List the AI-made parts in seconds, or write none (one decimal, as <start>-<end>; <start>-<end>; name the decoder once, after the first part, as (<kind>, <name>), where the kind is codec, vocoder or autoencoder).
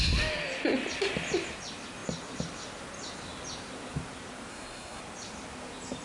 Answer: 4.5-5.0 (codec, SNAC)